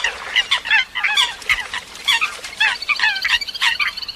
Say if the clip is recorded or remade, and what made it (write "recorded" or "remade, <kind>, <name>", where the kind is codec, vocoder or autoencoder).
remade, vocoder, BigVGAN v2